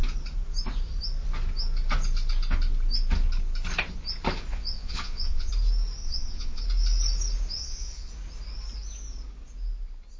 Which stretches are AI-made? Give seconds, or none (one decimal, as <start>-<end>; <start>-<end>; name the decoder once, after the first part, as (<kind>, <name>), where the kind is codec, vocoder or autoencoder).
4.5-5.5 (vocoder, Vocos); 6.0-6.6; 7.6-8.1